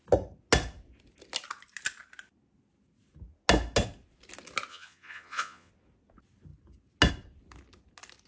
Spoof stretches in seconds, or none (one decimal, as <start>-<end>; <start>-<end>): 4.7-5.7